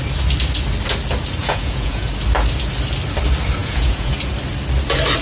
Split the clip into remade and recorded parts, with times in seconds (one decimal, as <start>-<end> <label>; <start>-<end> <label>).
0.0-1.4 recorded; 1.4-2.1 remade; 2.1-3.6 recorded; 3.6-4.1 remade; 4.1-5.2 recorded